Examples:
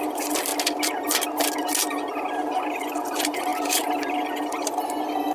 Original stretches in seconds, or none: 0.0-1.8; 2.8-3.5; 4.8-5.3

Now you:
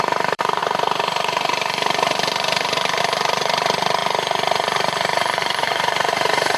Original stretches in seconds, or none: 0.6-3.0

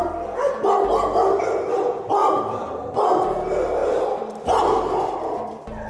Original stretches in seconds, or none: 0.0-2.2; 2.8-3.8

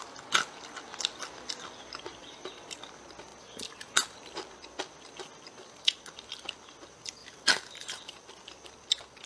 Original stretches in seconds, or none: 0.0-2.2; 2.9-3.3; 3.9-7.2; 8.3-9.3

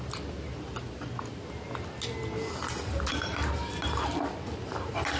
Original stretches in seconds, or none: 0.0-5.2

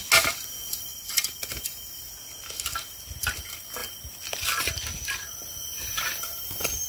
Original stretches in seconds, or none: 0.0-0.9; 2.0-6.9

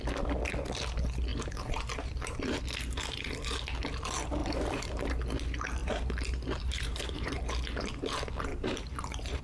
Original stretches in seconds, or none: 0.0-1.3; 2.6-4.4; 5.2-5.8; 7.4-8.5

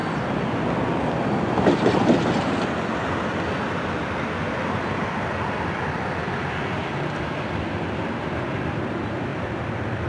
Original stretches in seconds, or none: 0.7-6.8; 8.1-9.3